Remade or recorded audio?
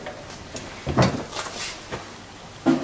recorded